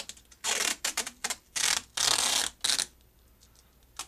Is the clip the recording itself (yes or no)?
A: yes